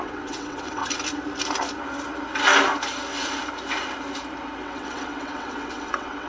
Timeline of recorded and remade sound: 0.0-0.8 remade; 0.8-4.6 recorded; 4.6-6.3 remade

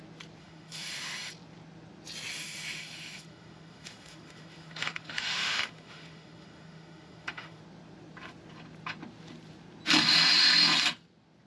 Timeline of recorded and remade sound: 0.0-0.4 recorded; 0.4-1.3 remade; 1.3-2.3 recorded; 2.3-7.6 remade; 7.6-11.5 recorded

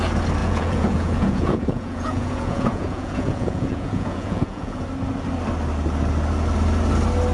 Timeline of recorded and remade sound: 0.0-0.4 recorded; 0.4-4.8 remade; 4.8-7.3 recorded

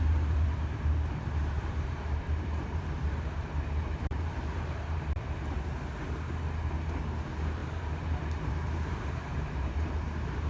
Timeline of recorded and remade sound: 0.0-1.4 recorded; 1.4-5.6 remade; 5.6-7.6 recorded; 7.6-9.9 remade; 9.9-10.5 recorded

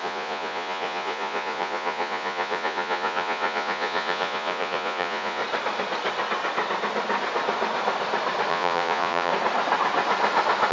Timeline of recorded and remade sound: 0.0-5.4 remade; 5.4-8.5 recorded; 8.5-9.3 remade; 9.3-10.7 recorded

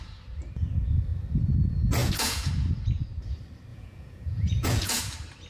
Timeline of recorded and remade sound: 0.0-2.0 recorded; 2.0-2.5 remade; 2.5-3.7 recorded; 3.7-5.0 remade; 5.0-5.5 recorded

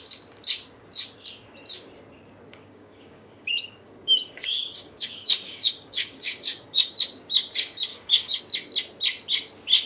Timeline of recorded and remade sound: 0.0-2.5 recorded; 2.5-6.9 remade; 6.9-7.9 recorded; 7.9-8.4 remade; 8.4-9.9 recorded